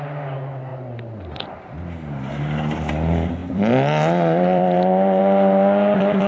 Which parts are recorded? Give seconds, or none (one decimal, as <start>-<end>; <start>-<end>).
0.0-0.7; 2.9-3.4; 5.2-6.3